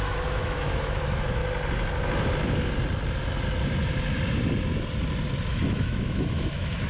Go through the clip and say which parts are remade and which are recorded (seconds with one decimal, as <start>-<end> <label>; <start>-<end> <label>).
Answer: 0.0-1.4 remade; 1.4-5.5 recorded; 5.5-6.9 remade